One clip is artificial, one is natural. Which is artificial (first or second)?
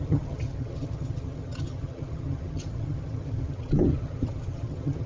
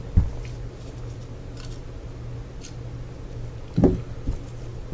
first